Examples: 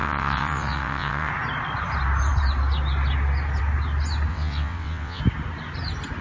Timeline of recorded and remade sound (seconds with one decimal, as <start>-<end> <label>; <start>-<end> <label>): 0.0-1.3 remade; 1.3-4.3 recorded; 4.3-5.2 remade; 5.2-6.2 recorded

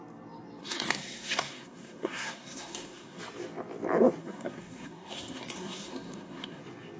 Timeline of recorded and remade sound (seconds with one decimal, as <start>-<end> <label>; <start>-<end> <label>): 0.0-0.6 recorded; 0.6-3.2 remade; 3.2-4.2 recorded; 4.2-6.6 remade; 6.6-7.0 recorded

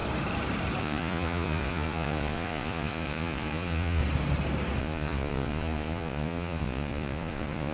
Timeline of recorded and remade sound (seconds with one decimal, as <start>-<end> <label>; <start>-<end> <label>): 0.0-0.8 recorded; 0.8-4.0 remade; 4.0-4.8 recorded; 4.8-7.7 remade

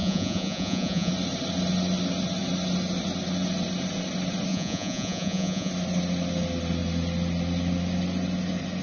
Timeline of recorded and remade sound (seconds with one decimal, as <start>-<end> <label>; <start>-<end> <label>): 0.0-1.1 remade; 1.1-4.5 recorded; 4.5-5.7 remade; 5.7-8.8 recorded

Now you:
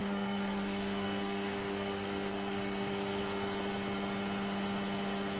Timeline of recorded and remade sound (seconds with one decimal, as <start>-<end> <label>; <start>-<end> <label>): 0.0-3.2 remade; 3.2-5.4 recorded

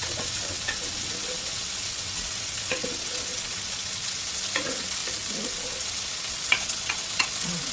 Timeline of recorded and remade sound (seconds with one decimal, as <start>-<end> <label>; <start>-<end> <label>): 0.0-5.0 remade; 5.0-5.5 recorded; 5.5-7.7 remade

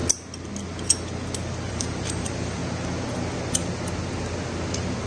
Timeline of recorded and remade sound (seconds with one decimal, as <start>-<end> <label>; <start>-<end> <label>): 0.0-1.7 recorded; 1.7-2.6 remade; 2.6-5.1 recorded